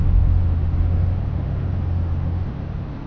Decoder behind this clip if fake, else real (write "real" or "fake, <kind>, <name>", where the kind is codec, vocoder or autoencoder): fake, autoencoder, DAC-VAE